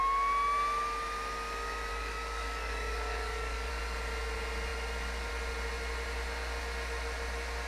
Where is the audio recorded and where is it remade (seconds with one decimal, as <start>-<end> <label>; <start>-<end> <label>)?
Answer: 0.0-1.9 recorded; 1.9-3.7 remade; 3.7-7.7 recorded